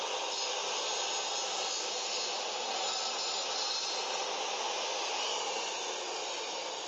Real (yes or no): yes